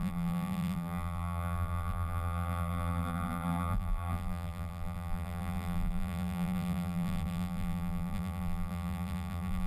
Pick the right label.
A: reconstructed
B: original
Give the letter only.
A